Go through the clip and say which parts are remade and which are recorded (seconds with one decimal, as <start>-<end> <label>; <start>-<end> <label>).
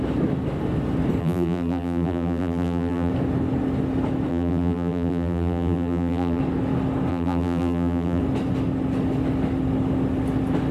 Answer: 0.0-1.2 recorded; 1.2-3.1 remade; 3.1-4.3 recorded; 4.3-6.4 remade; 6.4-7.1 recorded; 7.1-8.2 remade; 8.2-10.7 recorded